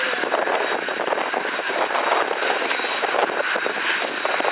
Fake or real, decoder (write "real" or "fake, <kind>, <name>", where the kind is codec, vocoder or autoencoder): real